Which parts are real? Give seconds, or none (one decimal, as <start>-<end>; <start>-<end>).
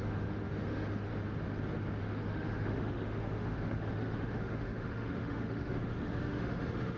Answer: 1.1-2.0